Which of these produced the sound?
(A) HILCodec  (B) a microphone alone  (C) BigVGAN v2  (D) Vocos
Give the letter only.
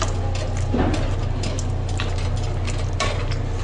B